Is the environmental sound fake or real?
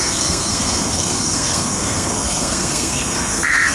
fake